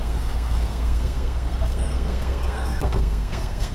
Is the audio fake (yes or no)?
yes